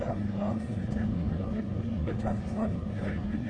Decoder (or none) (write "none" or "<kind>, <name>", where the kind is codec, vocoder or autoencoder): codec, SNAC